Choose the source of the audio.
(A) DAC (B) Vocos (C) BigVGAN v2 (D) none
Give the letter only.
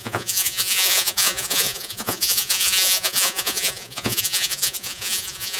B